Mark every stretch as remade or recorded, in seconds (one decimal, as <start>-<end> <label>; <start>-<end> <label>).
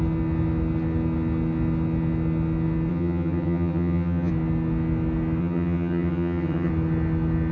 0.0-2.9 recorded; 2.9-4.3 remade; 4.3-5.4 recorded; 5.4-6.7 remade; 6.7-7.5 recorded